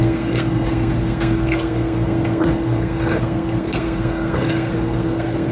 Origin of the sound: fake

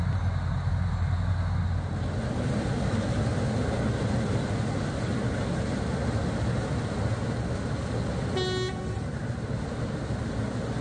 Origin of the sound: real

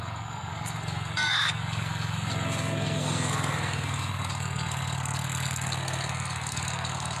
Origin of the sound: fake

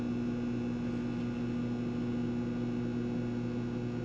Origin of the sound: real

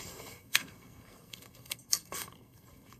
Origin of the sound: fake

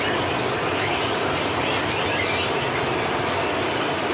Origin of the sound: real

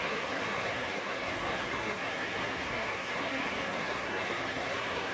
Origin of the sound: fake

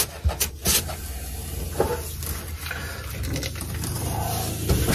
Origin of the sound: real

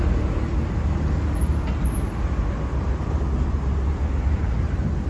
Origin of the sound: real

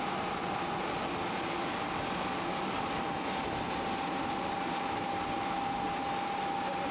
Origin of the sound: real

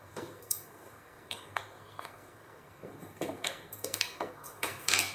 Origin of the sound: fake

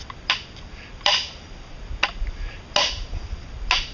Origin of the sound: real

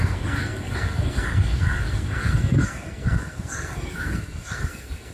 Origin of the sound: fake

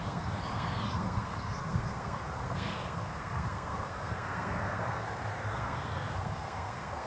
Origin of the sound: fake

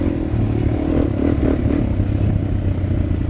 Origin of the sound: real